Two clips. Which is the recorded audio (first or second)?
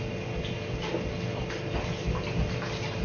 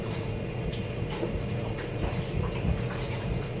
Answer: first